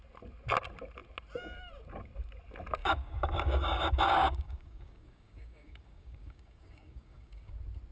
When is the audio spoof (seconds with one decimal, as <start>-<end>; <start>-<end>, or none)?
2.8-7.5